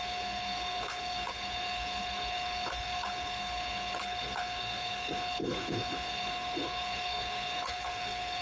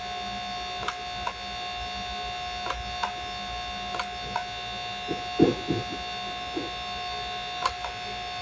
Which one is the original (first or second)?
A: second